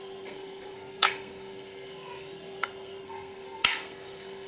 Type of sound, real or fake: fake